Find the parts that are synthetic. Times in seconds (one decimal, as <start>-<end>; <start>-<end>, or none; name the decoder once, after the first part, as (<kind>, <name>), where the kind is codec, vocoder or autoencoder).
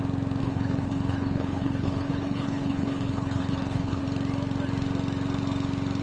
0.4-4.0 (codec, HILCodec)